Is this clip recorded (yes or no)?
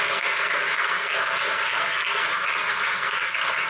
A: no